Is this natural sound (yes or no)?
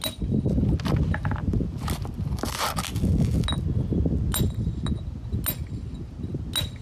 yes